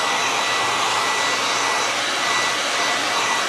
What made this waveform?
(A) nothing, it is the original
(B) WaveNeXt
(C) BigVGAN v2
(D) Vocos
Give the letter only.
A